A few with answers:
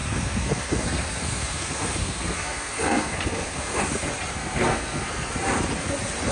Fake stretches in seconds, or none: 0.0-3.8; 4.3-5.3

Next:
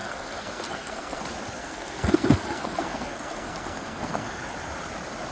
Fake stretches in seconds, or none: 0.0-1.2; 1.6-4.4

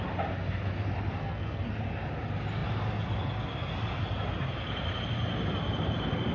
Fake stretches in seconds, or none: 1.2-1.7

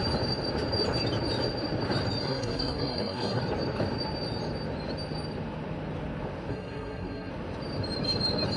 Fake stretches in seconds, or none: 2.2-3.4; 6.5-7.3